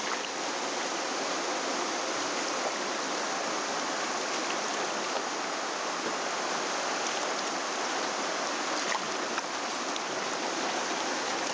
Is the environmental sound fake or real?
real